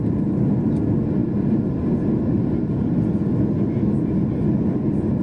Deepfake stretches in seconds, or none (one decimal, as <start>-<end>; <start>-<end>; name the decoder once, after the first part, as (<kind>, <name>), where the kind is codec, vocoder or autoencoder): none